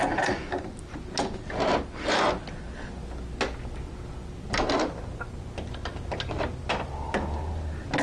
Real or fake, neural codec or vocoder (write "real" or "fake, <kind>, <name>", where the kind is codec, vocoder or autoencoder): real